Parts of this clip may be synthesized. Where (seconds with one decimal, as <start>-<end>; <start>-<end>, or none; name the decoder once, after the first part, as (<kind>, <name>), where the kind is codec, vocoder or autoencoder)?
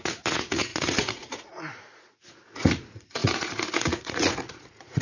0.0-5.0 (vocoder, Vocos)